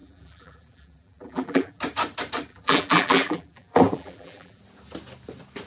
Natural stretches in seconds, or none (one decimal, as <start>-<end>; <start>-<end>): 1.8-2.5; 4.6-5.7